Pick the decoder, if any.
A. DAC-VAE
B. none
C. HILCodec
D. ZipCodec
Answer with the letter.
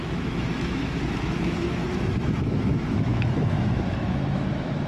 A